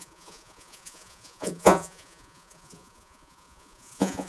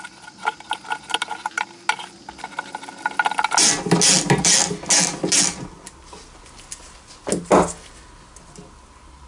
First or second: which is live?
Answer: second